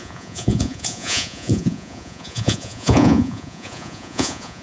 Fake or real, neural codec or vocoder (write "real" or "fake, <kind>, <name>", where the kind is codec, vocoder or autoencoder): fake, vocoder, Vocos